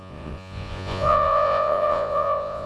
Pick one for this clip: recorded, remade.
remade